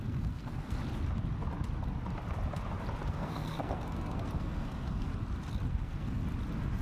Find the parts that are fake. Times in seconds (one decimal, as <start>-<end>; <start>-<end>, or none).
0.0-0.8; 3.1-5.1; 5.7-6.2